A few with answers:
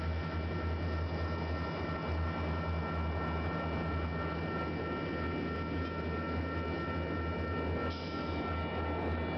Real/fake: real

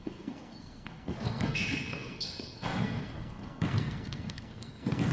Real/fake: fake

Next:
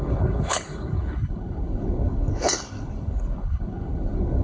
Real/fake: fake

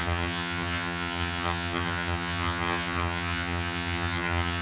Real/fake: fake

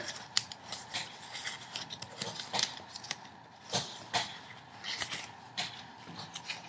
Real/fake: real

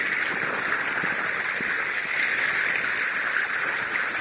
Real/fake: real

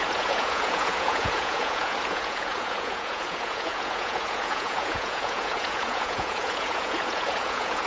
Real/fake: fake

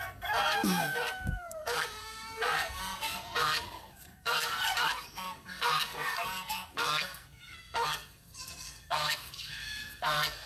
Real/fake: fake